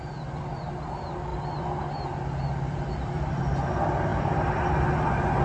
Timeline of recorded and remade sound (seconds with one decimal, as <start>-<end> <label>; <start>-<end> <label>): 0.0-1.3 recorded; 1.3-3.4 remade; 3.4-5.4 recorded